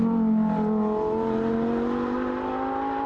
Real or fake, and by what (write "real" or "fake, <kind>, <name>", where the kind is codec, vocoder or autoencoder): real